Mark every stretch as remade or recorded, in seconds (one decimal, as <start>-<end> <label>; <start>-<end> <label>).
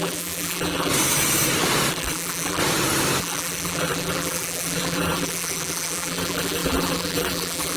0.0-0.9 remade; 0.9-1.9 recorded; 1.9-2.6 remade; 2.6-3.2 recorded; 3.2-7.8 remade